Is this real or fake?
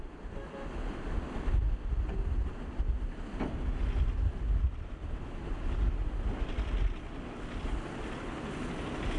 real